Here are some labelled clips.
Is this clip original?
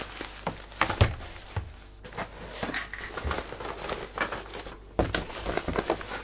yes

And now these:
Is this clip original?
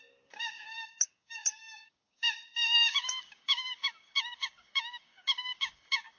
no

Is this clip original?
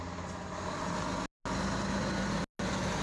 yes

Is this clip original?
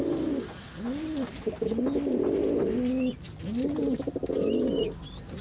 yes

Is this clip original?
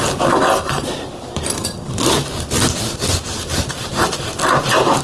yes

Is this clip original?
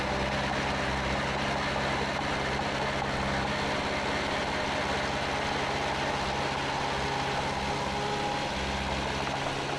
yes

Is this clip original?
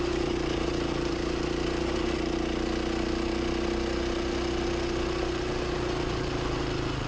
yes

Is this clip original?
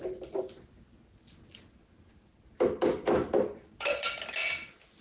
yes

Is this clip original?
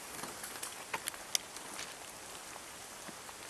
yes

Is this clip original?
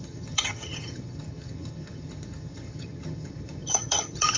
no